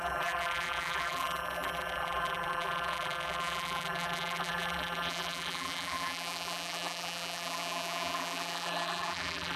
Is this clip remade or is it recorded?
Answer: remade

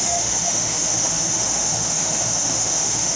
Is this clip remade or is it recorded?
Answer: remade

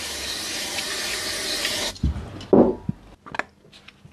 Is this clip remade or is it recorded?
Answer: recorded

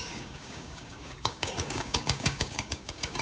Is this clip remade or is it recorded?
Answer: remade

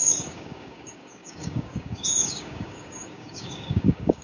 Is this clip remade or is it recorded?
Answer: remade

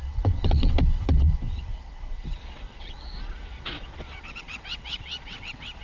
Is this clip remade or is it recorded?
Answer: remade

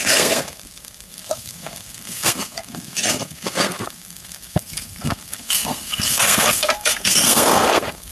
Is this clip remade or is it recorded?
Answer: remade